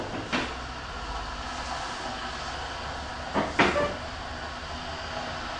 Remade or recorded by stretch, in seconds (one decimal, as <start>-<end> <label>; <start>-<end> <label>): 0.0-3.1 recorded; 3.1-4.3 remade; 4.3-5.6 recorded